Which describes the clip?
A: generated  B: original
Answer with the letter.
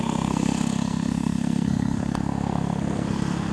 A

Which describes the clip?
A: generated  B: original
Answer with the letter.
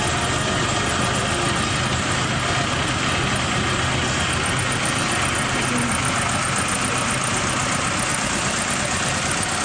B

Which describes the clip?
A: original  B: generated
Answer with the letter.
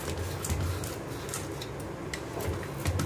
A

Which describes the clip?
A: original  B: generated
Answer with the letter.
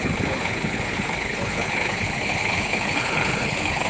B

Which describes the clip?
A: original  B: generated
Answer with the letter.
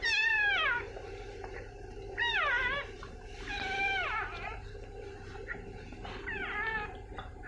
B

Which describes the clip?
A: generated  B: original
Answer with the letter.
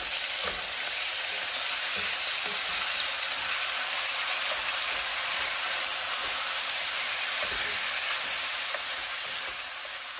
B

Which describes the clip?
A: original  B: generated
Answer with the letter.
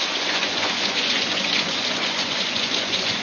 B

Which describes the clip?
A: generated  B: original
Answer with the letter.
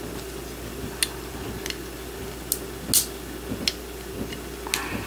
B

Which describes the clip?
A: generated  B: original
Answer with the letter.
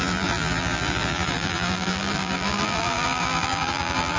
A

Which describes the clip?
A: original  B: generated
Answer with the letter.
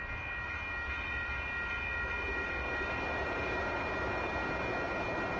A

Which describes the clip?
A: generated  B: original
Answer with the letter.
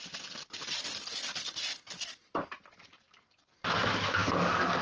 B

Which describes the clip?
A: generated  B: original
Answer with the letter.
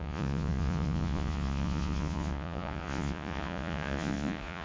A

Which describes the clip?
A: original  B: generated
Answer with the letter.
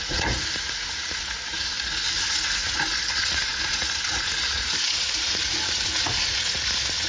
B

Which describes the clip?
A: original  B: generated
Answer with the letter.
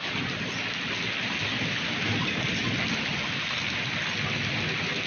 A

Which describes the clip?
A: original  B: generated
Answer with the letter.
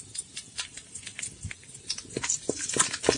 A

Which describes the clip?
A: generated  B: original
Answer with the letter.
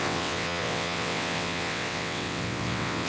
A